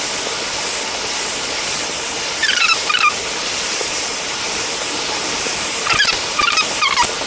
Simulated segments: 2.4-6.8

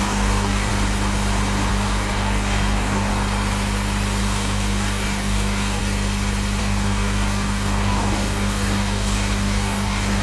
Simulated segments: 0.0-0.7; 1.7-3.1; 4.2-5.8; 6.6-10.2

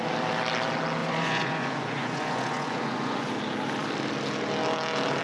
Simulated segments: 1.0-3.3

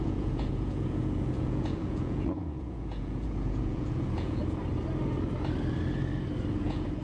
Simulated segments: 0.0-4.4; 6.5-7.0